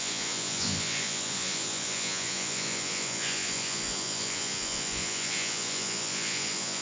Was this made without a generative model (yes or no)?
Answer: no